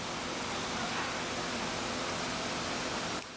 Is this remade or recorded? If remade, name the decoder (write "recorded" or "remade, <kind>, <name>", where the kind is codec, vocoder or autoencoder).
recorded